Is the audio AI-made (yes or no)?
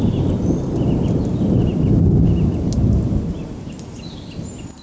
no